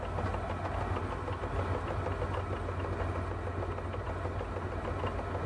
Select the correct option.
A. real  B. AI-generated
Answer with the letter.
A